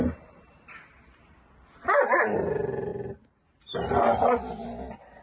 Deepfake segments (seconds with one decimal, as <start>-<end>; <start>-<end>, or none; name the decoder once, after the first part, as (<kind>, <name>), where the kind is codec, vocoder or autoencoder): none